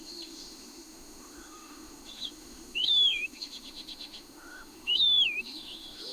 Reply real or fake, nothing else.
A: fake